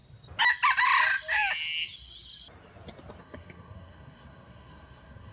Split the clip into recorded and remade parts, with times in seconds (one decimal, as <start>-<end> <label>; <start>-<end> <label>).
0.0-3.2 recorded; 3.2-5.3 remade